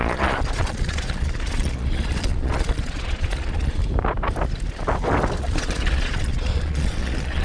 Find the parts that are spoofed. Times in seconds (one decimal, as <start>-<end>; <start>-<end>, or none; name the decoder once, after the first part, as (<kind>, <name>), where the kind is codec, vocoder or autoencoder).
0.0-3.8 (vocoder, Vocos); 5.4-7.4